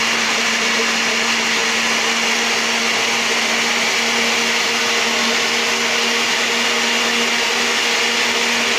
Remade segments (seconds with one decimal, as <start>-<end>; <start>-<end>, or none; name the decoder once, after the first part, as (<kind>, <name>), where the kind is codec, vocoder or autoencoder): none